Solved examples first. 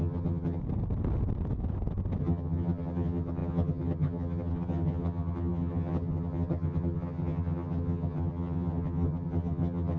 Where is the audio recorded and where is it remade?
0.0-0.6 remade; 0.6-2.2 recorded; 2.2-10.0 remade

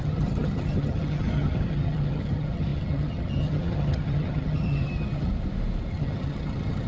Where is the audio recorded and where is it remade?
0.0-5.3 remade; 5.3-5.9 recorded; 5.9-6.9 remade

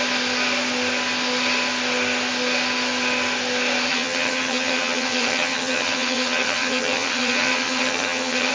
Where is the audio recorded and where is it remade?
0.0-3.9 recorded; 3.9-8.5 remade

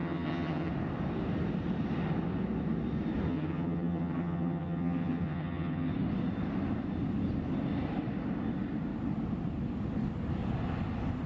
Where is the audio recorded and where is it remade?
0.0-0.7 remade; 0.7-3.3 recorded; 3.3-5.9 remade; 5.9-11.3 recorded

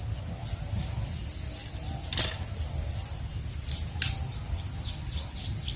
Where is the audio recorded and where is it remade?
0.0-5.8 recorded

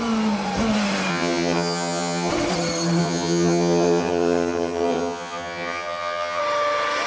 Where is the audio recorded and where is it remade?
0.0-1.1 recorded; 1.1-2.3 remade; 2.3-3.0 recorded; 3.0-6.4 remade; 6.4-7.1 recorded

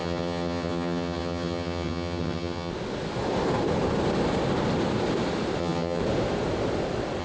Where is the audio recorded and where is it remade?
0.0-2.7 remade; 2.7-5.6 recorded; 5.6-6.0 remade; 6.0-7.2 recorded